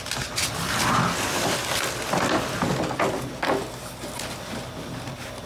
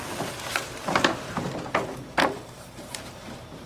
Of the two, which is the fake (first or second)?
second